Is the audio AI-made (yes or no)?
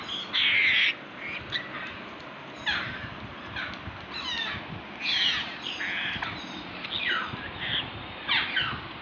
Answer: no